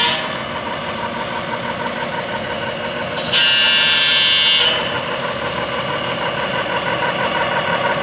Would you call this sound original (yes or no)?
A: yes